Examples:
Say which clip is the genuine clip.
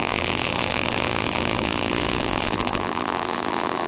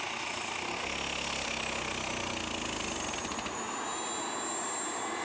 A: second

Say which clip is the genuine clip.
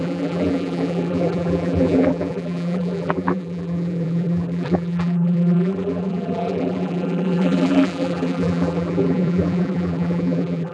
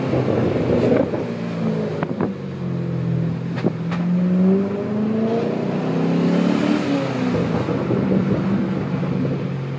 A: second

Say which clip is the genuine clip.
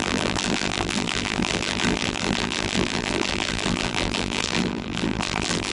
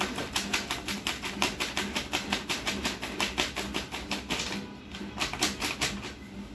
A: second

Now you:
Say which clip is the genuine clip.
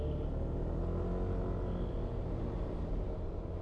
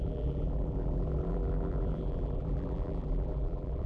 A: first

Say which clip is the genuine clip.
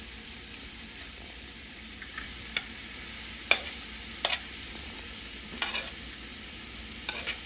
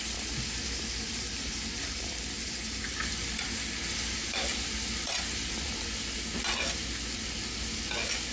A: second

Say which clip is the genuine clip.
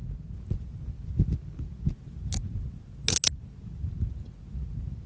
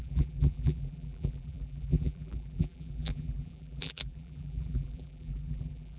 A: first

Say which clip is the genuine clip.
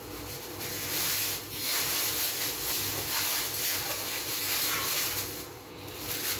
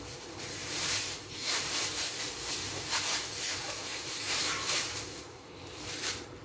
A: first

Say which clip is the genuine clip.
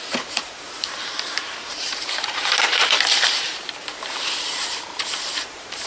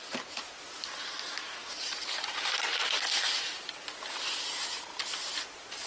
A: second